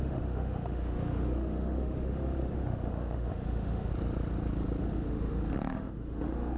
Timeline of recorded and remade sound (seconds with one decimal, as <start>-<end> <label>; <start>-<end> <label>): 0.0-3.9 remade; 3.9-4.8 recorded; 4.8-6.6 remade